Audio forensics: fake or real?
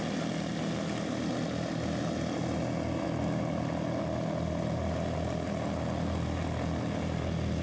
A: real